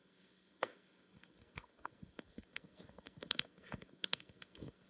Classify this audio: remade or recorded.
remade